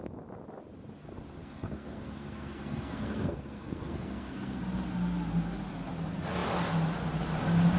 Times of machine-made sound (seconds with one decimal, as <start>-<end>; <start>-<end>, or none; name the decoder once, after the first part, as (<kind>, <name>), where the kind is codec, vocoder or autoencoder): 1.4-4.6 (codec, SNAC)